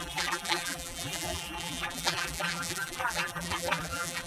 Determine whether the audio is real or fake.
fake